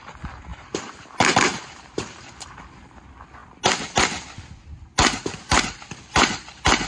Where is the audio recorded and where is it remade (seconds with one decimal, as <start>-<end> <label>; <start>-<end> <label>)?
0.0-0.5 recorded; 0.5-3.0 remade; 3.0-6.9 recorded